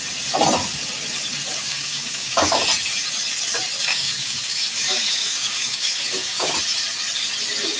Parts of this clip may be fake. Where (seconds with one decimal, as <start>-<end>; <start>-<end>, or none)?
1.6-2.6; 3.9-6.5

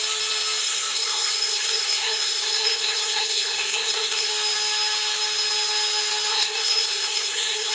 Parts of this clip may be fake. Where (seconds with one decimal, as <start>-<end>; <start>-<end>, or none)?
0.6-4.3; 6.3-7.7

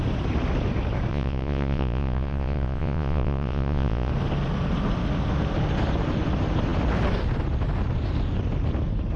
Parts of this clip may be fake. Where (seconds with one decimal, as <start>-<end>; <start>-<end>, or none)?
1.1-4.1

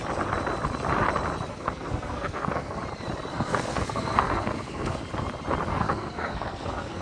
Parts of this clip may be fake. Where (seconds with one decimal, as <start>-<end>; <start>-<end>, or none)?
1.5-2.8; 3.3-5.0; 5.7-7.0

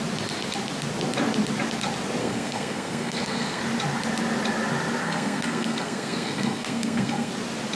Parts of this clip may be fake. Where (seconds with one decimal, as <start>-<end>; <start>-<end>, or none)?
2.2-3.6; 5.0-7.3

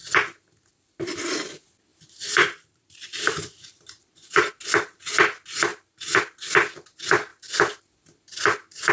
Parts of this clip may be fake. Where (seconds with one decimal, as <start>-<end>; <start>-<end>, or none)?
1.9-4.5; 5.7-6.2